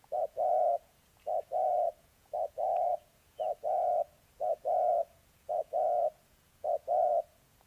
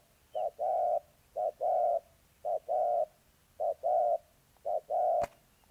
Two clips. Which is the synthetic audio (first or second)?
first